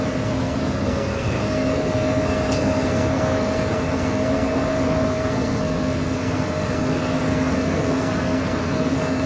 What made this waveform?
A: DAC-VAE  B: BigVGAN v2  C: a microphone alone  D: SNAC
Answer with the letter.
D